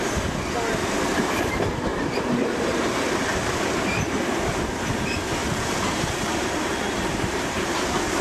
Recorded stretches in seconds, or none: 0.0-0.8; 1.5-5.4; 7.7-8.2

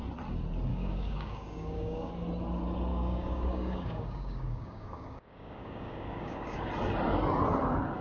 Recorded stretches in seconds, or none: 0.0-0.7; 2.1-2.9; 6.7-8.0

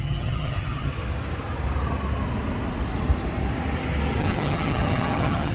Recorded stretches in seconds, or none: 0.9-4.2

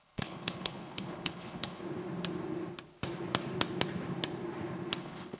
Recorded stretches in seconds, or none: 1.8-5.0

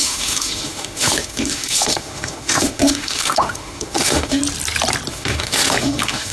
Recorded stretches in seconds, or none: 4.4-5.1

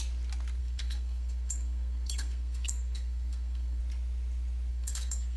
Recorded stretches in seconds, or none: 0.0-0.6; 3.8-4.7

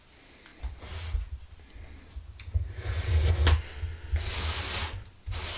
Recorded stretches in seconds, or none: 0.0-5.6